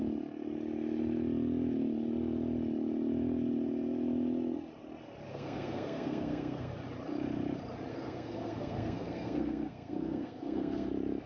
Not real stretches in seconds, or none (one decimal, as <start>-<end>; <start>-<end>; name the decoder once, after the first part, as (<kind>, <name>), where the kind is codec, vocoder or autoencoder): 5.3-6.7 (codec, SNAC); 7.9-10.9